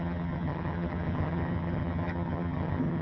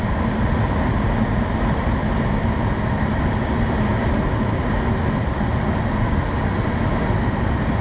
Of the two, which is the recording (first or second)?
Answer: second